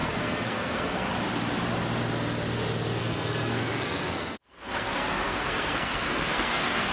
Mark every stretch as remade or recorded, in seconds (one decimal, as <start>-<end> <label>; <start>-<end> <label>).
0.0-1.1 remade; 1.1-3.0 recorded; 3.0-6.9 remade